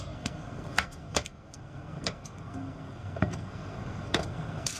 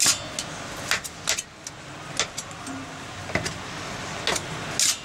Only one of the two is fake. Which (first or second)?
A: first